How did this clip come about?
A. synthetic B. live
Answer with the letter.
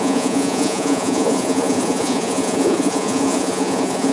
A